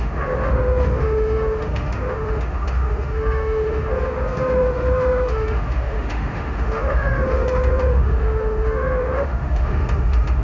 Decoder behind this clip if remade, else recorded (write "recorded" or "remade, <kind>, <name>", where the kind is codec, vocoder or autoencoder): remade, autoencoder, DAC-VAE